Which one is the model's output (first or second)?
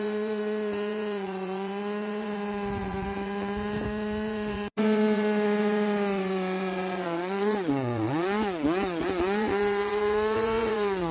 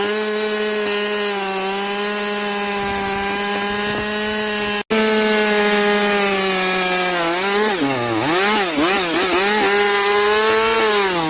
first